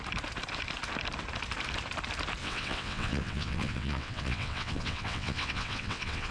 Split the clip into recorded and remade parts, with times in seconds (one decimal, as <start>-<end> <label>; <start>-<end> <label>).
0.0-2.4 recorded; 2.4-6.3 remade